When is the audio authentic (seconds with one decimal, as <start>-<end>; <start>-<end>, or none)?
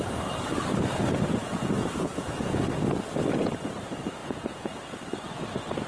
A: 0.0-1.4; 2.6-4.2; 4.8-5.9